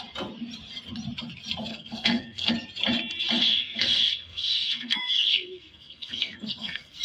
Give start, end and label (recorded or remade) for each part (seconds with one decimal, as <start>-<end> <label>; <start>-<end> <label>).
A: 0.0-1.7 recorded; 1.7-2.5 remade; 2.5-3.4 recorded; 3.4-7.0 remade